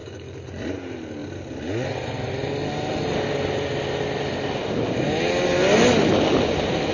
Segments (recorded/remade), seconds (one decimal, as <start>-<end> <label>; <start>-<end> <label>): 0.0-0.5 remade; 0.5-6.9 recorded